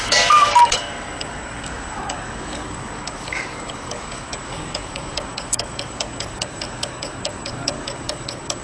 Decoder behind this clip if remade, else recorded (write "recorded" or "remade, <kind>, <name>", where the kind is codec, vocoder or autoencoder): remade, codec, DAC